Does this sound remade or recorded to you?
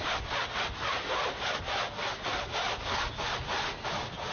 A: recorded